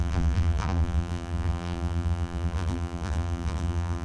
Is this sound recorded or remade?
remade